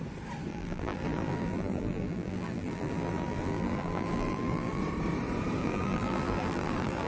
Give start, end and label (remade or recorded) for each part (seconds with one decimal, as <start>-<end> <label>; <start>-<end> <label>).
0.0-0.5 recorded; 0.5-4.8 remade; 4.8-5.6 recorded; 5.6-7.1 remade